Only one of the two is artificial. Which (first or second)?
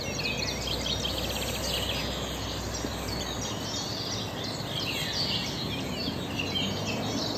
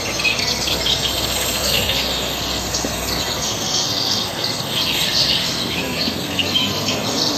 second